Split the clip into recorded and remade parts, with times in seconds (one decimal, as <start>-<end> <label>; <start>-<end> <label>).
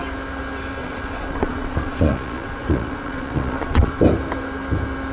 0.0-0.8 recorded; 0.8-3.9 remade; 3.9-5.1 recorded